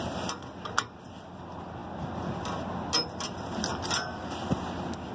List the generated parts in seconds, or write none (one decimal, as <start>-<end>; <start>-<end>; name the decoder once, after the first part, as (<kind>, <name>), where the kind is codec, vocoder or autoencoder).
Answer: none